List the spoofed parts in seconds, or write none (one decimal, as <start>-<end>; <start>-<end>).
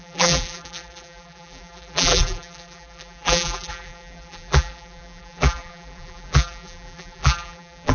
0.0-7.9